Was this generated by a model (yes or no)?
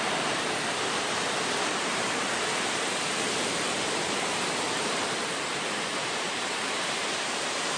yes